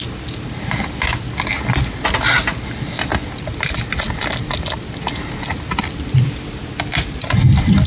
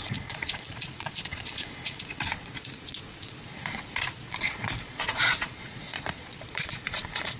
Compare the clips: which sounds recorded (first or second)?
first